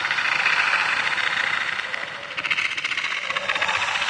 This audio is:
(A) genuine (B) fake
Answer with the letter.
A